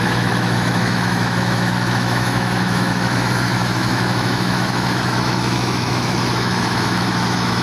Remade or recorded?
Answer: remade